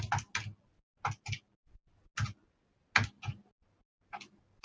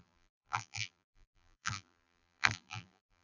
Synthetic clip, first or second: second